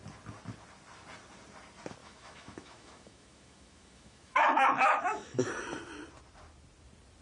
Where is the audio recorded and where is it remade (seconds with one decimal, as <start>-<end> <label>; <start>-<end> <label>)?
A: 0.0-2.0 recorded; 2.0-5.5 remade; 5.5-7.2 recorded